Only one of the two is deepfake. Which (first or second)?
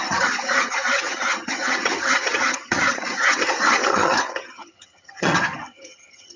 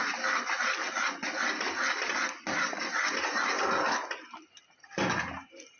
first